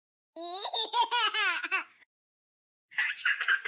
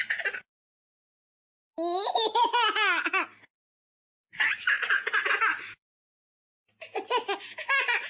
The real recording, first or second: second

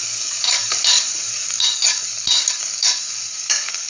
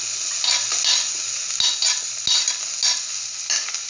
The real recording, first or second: second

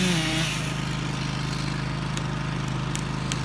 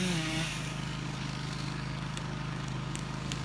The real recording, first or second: first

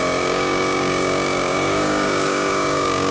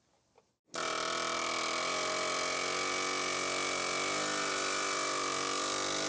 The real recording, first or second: second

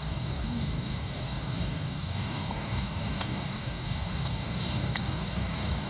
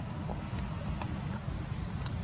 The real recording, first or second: second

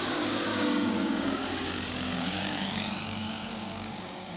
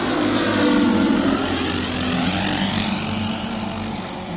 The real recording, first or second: second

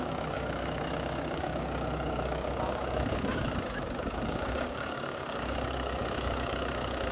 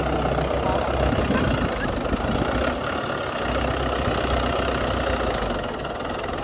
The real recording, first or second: second